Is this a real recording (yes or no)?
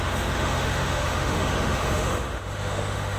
no